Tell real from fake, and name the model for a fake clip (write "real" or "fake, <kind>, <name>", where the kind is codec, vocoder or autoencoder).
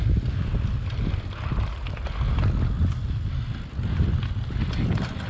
real